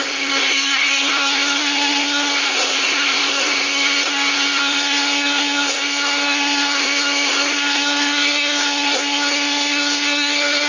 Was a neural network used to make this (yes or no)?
yes